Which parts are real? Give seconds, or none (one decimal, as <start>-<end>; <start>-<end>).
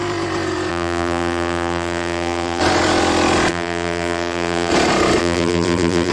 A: 0.0-0.7; 2.6-3.5; 4.7-5.2